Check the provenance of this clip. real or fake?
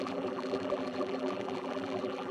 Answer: fake